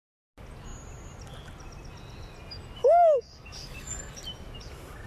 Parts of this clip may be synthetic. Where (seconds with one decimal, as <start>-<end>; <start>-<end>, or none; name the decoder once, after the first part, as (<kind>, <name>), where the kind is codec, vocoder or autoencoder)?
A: 2.8-4.2 (codec, DAC)